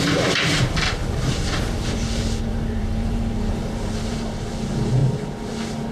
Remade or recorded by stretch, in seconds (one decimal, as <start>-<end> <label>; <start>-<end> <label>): 0.0-1.0 recorded; 1.0-4.5 remade; 4.5-5.9 recorded

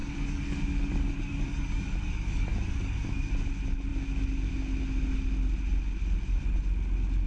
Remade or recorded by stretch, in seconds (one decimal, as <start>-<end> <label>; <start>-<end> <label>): 0.0-3.3 remade; 3.3-7.3 recorded

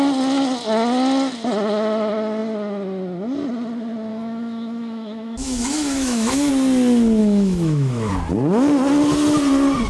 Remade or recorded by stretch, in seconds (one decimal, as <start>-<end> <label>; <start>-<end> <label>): 0.0-4.1 recorded; 4.1-6.5 remade; 6.5-7.2 recorded; 7.2-8.1 remade; 8.1-9.9 recorded

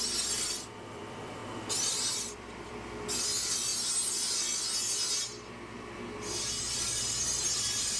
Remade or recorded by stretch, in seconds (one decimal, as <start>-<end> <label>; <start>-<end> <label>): 0.0-3.7 remade; 3.7-6.9 recorded; 6.9-8.0 remade

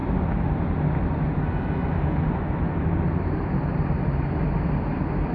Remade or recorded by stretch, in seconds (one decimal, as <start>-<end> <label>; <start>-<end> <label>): 0.0-5.3 recorded

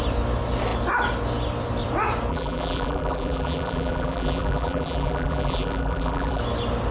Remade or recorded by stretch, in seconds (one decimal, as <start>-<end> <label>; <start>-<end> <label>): 0.0-2.3 recorded; 2.3-6.4 remade; 6.4-6.9 recorded

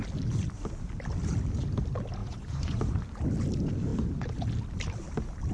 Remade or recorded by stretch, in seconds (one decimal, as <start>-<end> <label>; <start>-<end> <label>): 0.0-2.2 recorded; 2.2-2.8 remade; 2.8-5.5 recorded